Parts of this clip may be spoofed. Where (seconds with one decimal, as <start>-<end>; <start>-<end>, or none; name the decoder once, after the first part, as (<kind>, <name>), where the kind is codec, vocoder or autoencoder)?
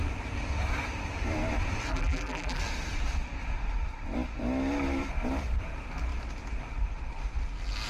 1.9-2.6 (vocoder, BigVGAN v2)